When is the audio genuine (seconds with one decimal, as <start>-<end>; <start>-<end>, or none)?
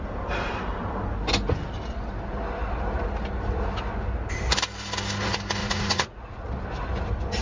0.0-5.6; 6.5-7.4